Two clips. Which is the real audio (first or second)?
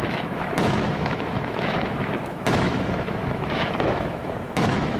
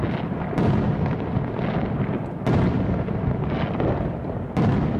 second